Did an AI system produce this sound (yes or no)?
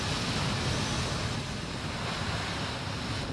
no